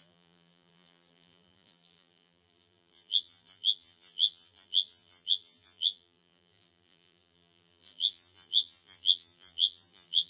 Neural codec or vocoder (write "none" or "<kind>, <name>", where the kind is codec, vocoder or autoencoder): vocoder, BigVGAN v2